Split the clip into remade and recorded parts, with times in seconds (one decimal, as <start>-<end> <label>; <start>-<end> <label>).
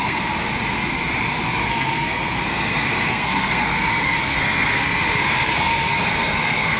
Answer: 0.0-0.5 remade; 0.5-1.7 recorded; 1.7-6.8 remade